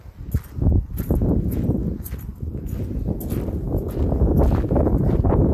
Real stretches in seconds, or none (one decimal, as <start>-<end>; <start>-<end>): 0.0-5.5